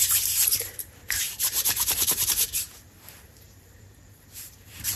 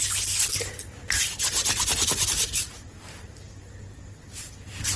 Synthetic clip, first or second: first